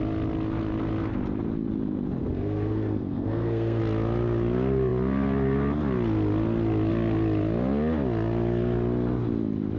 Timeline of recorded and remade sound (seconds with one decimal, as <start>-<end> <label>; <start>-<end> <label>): 0.0-2.2 recorded; 2.2-3.8 remade; 3.8-9.8 recorded